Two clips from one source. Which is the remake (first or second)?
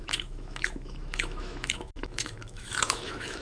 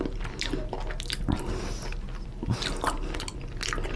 first